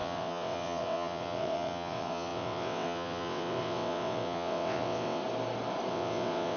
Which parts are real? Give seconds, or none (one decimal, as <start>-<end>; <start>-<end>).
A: 5.2-5.9